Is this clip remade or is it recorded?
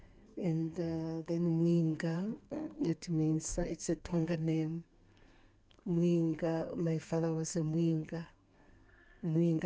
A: remade